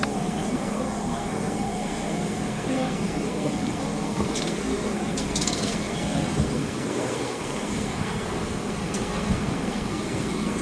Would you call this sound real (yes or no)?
no